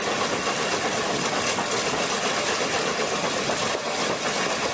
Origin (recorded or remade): recorded